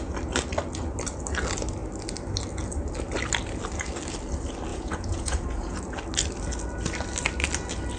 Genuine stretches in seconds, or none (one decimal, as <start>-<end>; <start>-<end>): 0.0-4.7; 5.8-8.0